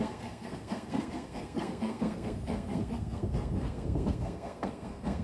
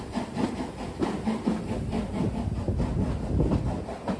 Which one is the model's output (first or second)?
first